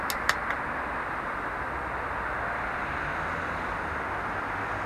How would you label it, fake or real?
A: real